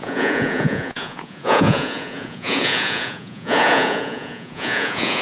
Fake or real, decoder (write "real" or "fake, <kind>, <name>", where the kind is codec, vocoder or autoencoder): fake, vocoder, Vocos